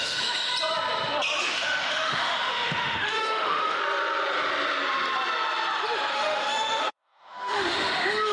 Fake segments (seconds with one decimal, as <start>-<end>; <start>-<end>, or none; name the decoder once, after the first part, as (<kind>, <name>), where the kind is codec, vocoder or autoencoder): 0.0-0.5 (autoencoder, DAC-VAE); 1.4-3.8; 6.1-8.3